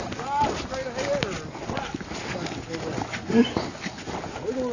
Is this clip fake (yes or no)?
no